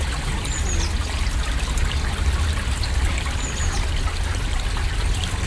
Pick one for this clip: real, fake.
real